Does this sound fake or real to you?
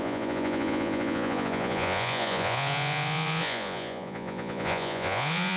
fake